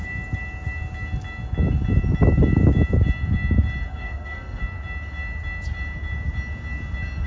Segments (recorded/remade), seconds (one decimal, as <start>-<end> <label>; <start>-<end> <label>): 0.0-3.9 recorded; 3.9-4.6 remade; 4.6-7.3 recorded